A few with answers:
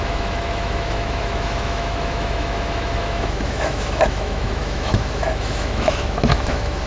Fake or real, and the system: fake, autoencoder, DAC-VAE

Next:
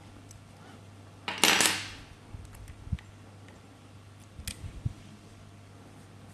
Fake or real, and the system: real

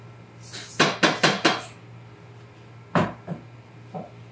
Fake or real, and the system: real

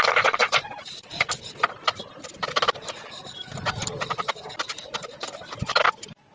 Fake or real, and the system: real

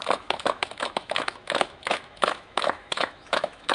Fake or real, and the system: fake, autoencoder, DAC-VAE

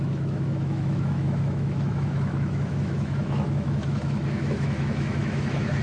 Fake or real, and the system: fake, autoencoder, DAC-VAE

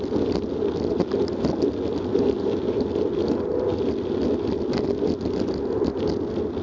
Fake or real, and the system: real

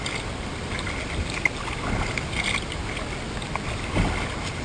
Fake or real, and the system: real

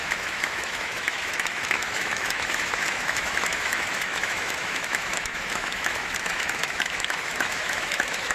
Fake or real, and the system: fake, autoencoder, DAC-VAE